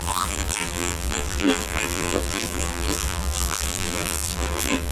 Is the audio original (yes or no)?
no